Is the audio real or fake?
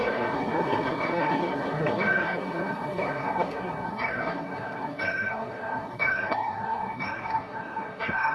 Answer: fake